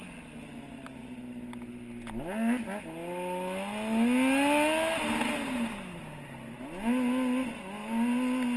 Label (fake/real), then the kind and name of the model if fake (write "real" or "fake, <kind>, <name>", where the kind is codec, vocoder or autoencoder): real